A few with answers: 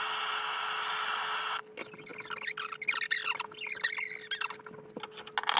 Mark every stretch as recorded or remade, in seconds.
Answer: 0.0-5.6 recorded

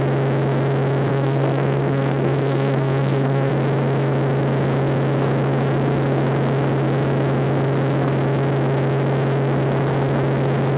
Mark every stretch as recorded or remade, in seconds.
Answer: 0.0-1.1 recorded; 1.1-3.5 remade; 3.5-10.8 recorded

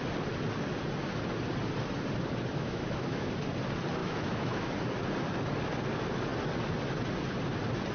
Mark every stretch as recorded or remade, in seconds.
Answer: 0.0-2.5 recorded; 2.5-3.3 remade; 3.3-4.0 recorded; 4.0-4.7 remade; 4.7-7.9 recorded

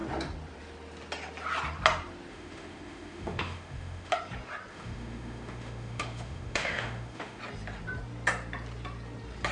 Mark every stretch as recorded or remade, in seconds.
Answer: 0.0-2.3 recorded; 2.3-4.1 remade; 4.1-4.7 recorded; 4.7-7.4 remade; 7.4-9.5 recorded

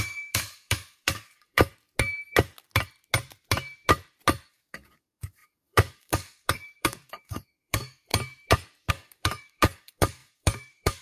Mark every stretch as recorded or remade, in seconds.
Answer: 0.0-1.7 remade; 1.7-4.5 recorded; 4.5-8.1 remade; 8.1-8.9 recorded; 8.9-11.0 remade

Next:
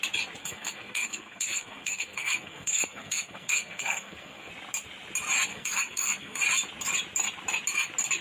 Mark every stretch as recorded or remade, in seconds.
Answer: 0.0-0.4 recorded; 0.4-4.5 remade; 4.5-5.5 recorded; 5.5-6.4 remade; 6.4-8.2 recorded